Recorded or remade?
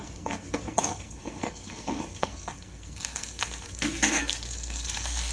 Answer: remade